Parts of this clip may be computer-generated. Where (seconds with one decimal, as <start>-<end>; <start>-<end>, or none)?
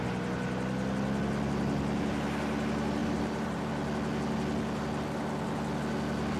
3.0-3.7